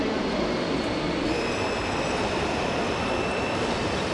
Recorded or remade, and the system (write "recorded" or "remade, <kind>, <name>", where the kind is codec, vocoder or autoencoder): recorded